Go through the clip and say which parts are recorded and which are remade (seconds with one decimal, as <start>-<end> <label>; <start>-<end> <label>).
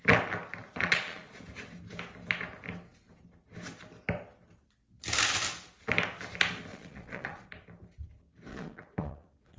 0.0-0.6 recorded; 0.6-1.4 remade; 1.4-6.7 recorded; 6.7-7.5 remade; 7.5-8.5 recorded; 8.5-9.6 remade